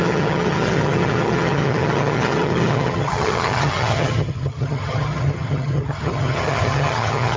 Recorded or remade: remade